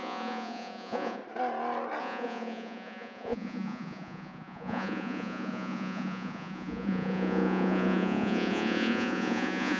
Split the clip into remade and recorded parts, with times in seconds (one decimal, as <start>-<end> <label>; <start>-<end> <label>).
0.0-1.2 remade; 1.2-2.0 recorded; 2.0-9.8 remade